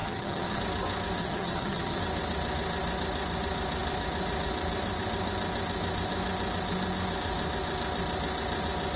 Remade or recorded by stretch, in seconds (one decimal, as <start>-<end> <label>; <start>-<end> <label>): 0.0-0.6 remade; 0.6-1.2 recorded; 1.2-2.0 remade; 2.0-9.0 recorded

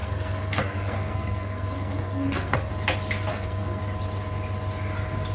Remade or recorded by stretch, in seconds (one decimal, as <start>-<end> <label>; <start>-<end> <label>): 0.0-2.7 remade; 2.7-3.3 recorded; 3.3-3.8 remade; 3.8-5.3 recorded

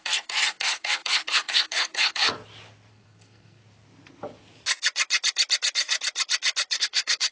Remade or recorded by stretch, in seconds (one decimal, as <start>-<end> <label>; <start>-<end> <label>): 0.0-2.3 remade; 2.3-2.9 recorded; 2.9-3.6 remade; 3.6-6.8 recorded; 6.8-7.3 remade

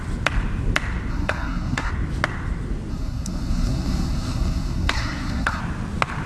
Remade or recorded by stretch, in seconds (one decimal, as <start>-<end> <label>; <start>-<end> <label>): 0.0-1.1 recorded; 1.1-1.9 remade; 1.9-2.9 recorded; 2.9-5.6 remade; 5.6-6.3 recorded

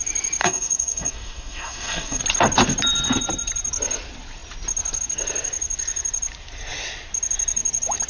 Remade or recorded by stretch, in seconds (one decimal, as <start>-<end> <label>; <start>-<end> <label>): 0.0-0.4 recorded; 0.4-2.2 remade; 2.2-8.1 recorded